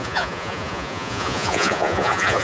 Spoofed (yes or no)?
yes